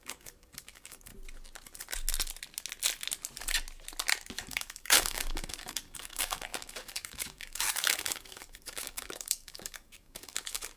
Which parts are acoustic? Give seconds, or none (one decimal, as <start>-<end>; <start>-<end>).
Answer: 1.1-4.4